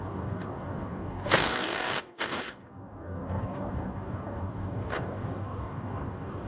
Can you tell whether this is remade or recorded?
remade